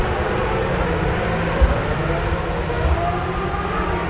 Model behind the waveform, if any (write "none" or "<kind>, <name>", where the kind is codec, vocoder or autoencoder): none